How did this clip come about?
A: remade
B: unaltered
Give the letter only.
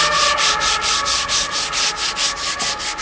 B